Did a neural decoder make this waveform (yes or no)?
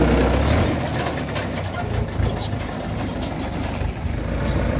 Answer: no